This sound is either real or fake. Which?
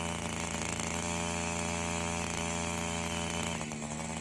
real